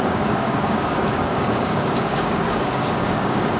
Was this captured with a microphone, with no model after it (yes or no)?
no